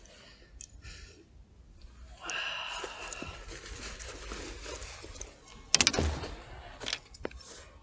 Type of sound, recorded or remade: recorded